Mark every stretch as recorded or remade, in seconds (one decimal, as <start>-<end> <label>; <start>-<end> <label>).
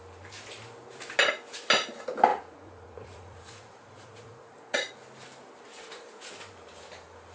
0.0-2.3 recorded; 2.3-4.9 remade; 4.9-5.7 recorded; 5.7-6.3 remade; 6.3-7.3 recorded